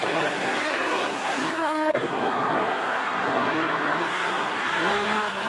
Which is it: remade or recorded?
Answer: remade